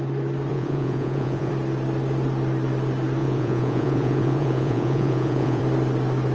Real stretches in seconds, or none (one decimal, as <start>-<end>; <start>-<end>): 0.0-0.5; 1.5-3.2; 5.6-6.3